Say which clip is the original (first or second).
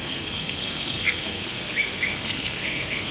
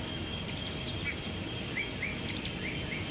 second